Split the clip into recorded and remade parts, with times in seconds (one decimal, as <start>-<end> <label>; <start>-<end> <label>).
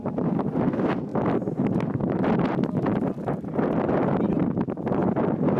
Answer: 0.0-5.6 recorded